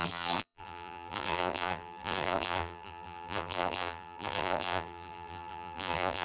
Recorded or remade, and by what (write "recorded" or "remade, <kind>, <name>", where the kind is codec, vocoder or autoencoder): remade, vocoder, BigVGAN v2